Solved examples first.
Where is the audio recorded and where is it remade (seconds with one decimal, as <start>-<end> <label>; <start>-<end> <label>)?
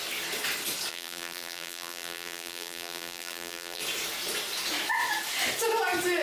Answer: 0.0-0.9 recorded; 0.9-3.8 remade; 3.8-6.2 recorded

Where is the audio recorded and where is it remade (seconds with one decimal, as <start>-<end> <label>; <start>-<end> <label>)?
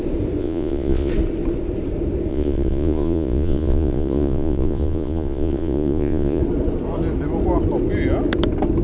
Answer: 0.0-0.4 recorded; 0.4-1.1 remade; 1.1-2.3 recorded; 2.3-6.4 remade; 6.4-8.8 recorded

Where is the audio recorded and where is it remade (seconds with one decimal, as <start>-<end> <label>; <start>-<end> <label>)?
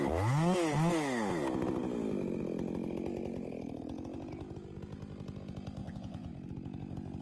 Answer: 0.0-5.8 recorded; 5.8-6.3 remade; 6.3-7.2 recorded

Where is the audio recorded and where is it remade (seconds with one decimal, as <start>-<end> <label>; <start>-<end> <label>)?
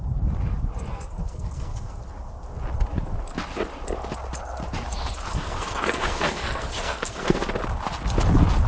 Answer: 0.0-0.9 recorded; 0.9-2.0 remade; 2.0-5.3 recorded; 5.3-7.4 remade; 7.4-8.7 recorded